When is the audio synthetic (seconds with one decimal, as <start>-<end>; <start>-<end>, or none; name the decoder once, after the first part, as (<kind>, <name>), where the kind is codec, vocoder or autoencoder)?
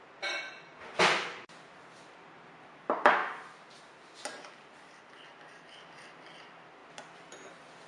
none